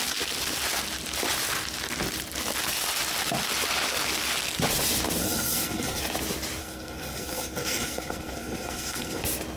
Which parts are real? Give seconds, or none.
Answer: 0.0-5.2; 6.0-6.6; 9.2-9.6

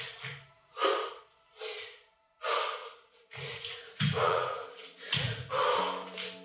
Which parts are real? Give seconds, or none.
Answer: 0.0-2.8; 5.5-6.4

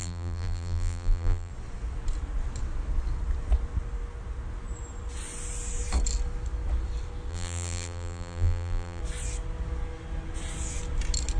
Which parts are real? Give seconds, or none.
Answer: 1.5-7.3; 9.0-11.4

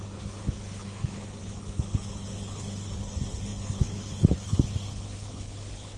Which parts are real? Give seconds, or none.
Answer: none

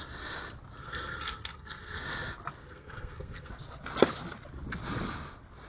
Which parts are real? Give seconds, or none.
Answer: 0.0-0.8; 2.0-2.6; 3.5-5.7

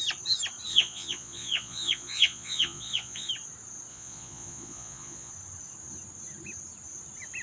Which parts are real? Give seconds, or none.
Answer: 0.0-0.7; 3.3-3.9; 5.3-7.4

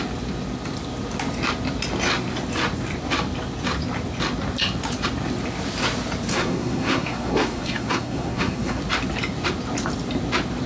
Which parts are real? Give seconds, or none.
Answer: 0.0-6.3; 8.8-10.7

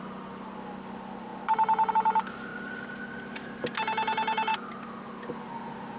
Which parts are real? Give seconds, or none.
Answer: 0.0-6.0